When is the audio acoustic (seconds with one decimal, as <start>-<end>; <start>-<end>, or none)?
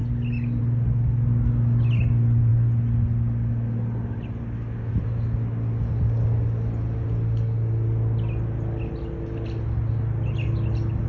0.0-11.1